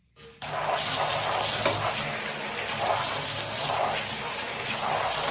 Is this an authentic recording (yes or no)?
yes